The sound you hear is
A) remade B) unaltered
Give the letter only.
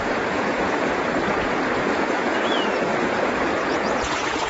A